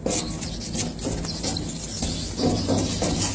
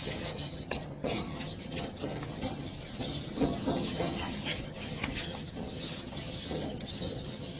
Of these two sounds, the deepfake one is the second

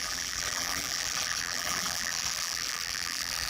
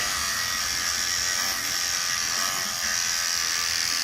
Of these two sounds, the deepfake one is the first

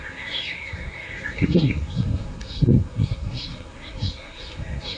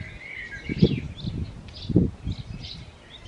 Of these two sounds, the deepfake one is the first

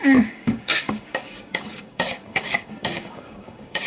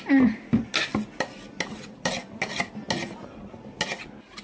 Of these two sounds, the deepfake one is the first